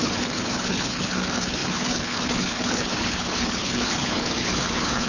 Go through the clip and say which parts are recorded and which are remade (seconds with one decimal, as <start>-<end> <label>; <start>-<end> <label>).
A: 0.0-5.1 remade